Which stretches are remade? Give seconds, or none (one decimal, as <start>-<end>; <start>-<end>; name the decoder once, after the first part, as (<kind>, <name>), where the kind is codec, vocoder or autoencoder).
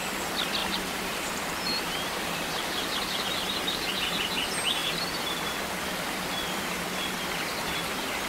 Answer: 0.6-3.9 (vocoder, BigVGAN v2); 4.8-5.3